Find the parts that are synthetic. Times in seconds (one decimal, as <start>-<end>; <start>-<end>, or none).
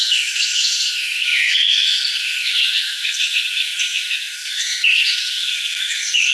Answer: 0.0-6.3